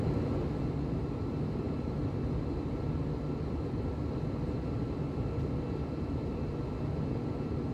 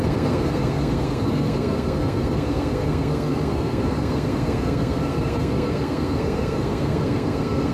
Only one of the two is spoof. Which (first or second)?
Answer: second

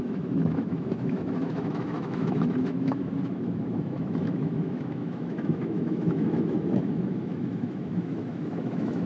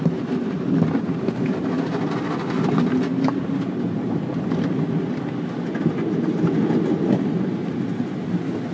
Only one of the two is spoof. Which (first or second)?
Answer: first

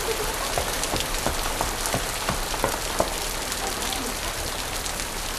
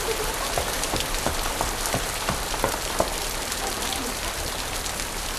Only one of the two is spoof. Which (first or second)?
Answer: second